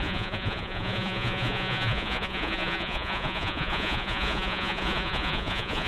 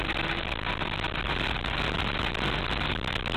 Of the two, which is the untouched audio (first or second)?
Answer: second